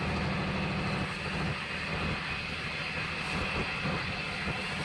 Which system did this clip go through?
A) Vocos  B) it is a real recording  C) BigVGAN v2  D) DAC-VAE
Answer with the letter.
B